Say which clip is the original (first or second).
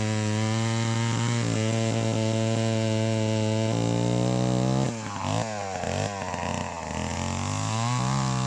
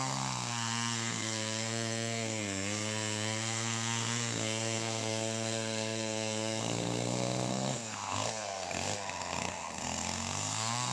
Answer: first